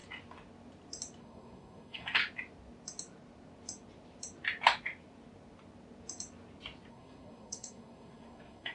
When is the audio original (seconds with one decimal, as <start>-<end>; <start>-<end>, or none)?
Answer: 0.0-1.2; 2.2-6.9